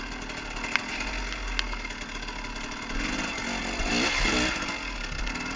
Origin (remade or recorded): recorded